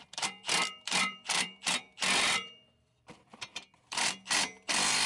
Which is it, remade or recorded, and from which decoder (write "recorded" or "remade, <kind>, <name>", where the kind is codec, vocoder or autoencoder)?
remade, vocoder, BigVGAN v2